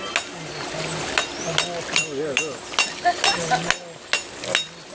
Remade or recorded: recorded